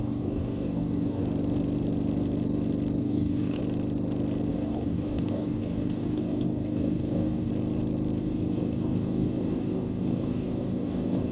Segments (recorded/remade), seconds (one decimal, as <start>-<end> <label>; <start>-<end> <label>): 0.0-1.2 remade; 1.2-3.0 recorded; 3.0-3.6 remade; 3.6-4.5 recorded; 4.5-7.5 remade; 7.5-8.2 recorded; 8.2-11.3 remade